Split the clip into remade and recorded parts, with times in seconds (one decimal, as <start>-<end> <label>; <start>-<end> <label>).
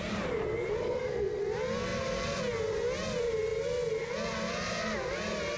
0.0-0.8 recorded; 0.8-1.4 remade; 1.4-5.6 recorded